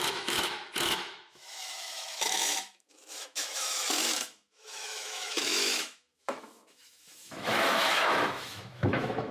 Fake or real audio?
fake